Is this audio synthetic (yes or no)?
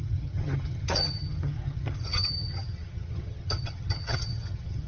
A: yes